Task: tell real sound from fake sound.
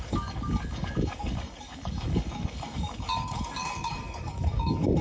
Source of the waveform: fake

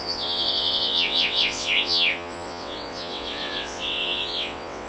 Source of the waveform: fake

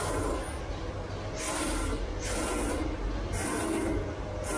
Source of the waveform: real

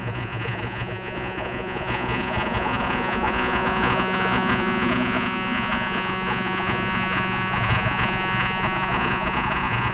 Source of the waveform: fake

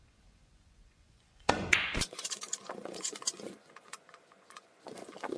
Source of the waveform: fake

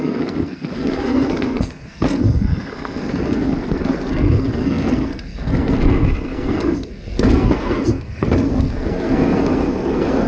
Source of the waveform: fake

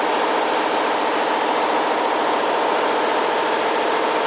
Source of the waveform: real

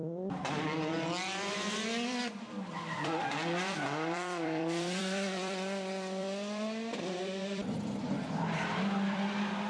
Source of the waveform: fake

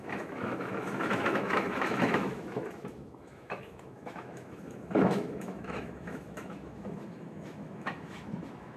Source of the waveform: fake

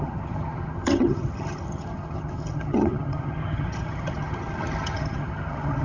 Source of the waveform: fake